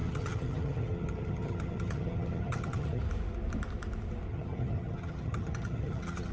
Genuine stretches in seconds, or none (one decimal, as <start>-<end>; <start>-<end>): 3.0-4.3